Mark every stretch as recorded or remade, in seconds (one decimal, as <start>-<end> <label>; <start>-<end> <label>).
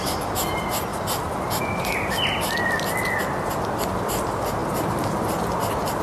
0.0-6.0 recorded